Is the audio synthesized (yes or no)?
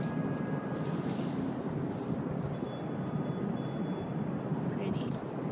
no